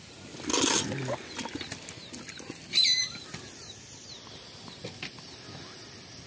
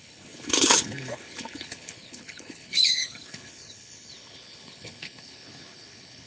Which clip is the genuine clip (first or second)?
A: first